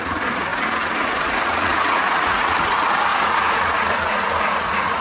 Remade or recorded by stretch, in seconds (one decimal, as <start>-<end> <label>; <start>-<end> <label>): 0.0-5.0 remade